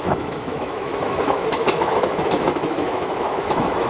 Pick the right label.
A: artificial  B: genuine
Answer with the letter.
A